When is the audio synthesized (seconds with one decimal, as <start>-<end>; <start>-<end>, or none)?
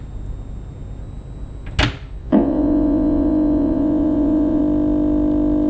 2.2-4.6